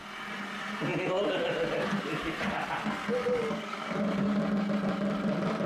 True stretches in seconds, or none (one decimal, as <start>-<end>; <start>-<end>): 0.0-3.2; 4.4-5.7